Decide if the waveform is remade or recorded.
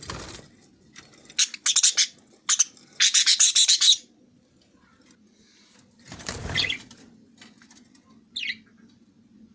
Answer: recorded